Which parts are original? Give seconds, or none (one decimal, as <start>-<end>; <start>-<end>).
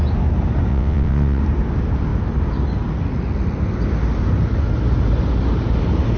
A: 0.0-0.7; 1.4-6.2